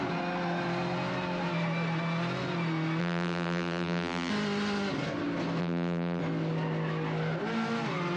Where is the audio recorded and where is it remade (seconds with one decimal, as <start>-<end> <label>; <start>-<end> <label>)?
0.0-3.0 recorded; 3.0-4.3 remade; 4.3-5.6 recorded; 5.6-6.2 remade; 6.2-8.2 recorded